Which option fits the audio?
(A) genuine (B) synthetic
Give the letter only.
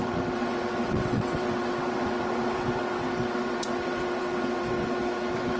B